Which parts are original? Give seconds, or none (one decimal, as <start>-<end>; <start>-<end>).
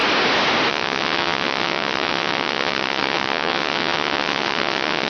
0.0-0.7